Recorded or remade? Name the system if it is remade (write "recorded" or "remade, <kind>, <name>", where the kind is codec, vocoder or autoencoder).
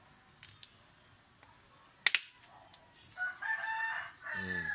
recorded